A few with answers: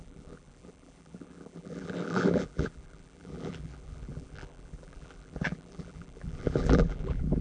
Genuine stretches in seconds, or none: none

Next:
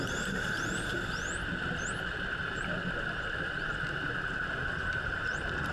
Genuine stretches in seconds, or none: 0.0-4.6; 5.3-5.7

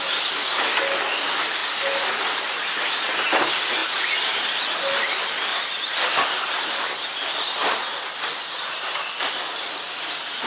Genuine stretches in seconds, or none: 0.0-5.5; 9.3-10.5

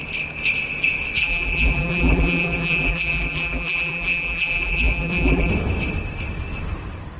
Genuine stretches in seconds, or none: 0.0-1.2; 5.5-7.2

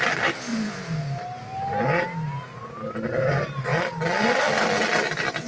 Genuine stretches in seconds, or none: 0.0-0.5; 1.2-5.5

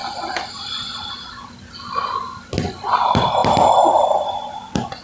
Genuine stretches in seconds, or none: 1.5-3.4; 4.4-5.0

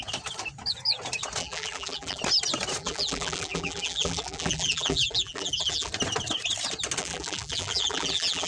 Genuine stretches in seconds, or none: 0.0-1.4; 2.2-2.8; 5.9-7.0